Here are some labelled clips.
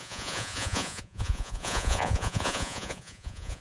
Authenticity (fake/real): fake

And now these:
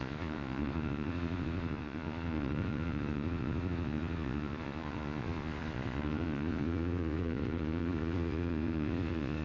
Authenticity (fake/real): fake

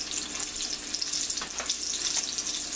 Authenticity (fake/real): real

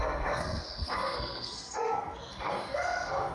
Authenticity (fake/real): fake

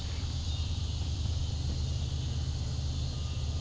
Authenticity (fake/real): real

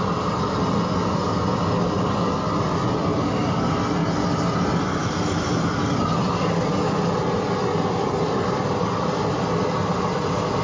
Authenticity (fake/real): real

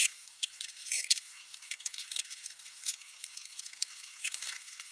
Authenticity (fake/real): fake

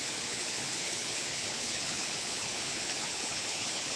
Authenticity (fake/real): fake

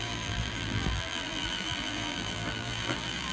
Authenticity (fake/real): fake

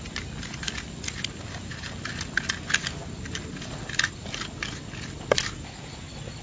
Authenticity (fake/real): real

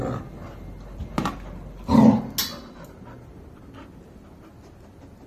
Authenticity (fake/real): real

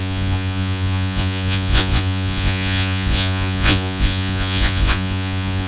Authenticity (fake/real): fake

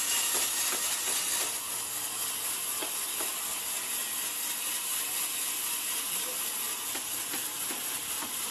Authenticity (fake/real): real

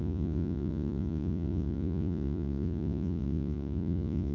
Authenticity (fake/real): fake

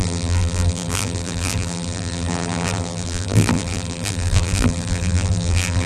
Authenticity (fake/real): fake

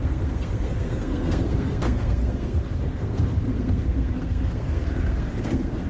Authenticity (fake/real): fake